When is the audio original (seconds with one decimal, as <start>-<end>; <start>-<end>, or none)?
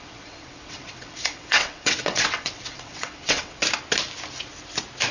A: 3.6-5.1